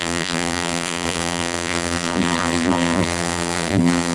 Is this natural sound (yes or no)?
no